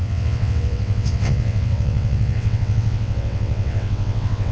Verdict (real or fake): fake